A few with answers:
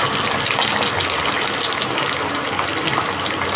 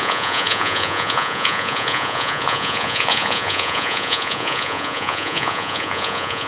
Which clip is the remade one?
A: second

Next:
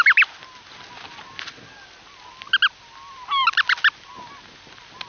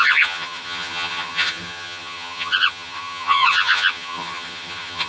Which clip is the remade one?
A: second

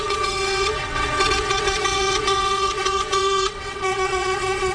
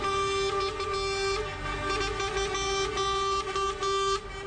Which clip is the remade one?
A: first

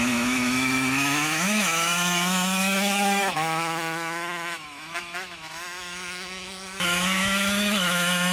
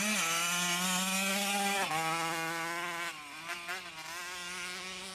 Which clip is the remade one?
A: first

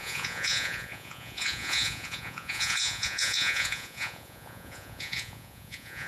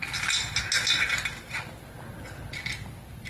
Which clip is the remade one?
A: first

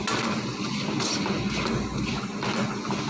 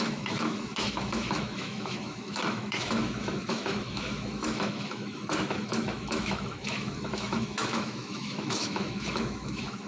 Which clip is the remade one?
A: second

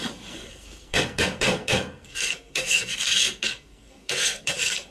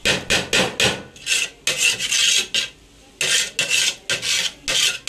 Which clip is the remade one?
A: first